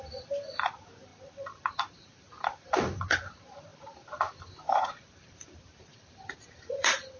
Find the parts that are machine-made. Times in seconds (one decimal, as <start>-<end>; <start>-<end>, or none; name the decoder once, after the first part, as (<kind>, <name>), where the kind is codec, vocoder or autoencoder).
0.0-7.2 (vocoder, BigVGAN v2)